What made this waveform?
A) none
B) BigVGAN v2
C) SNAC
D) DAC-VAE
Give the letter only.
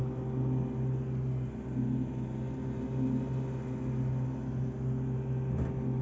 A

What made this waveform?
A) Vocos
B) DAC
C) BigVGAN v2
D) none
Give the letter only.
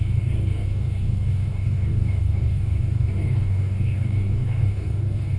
B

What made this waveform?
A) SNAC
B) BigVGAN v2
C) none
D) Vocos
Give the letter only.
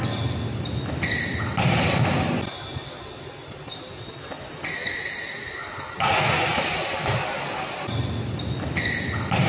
C